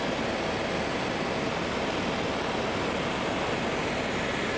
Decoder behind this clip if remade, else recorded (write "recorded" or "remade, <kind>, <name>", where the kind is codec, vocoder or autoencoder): recorded